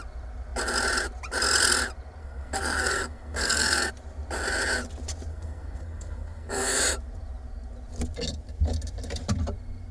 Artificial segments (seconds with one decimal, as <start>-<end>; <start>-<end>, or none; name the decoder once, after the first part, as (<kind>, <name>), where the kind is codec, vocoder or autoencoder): 2.2-3.9 (codec, SNAC); 5.3-6.8